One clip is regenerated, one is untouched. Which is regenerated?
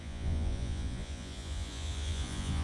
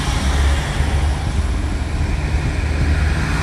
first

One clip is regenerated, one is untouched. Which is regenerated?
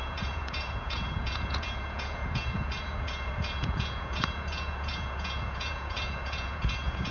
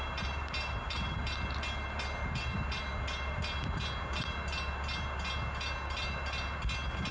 first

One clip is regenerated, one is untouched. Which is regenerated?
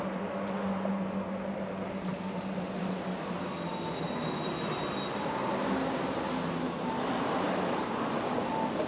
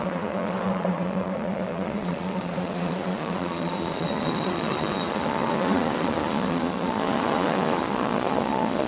second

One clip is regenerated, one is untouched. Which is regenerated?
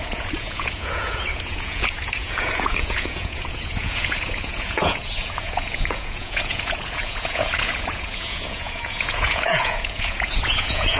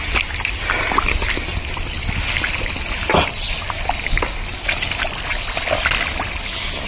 first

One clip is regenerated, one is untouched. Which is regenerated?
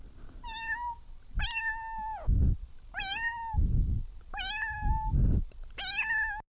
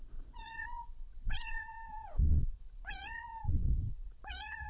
second